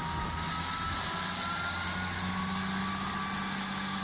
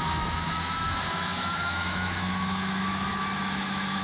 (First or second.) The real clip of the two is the first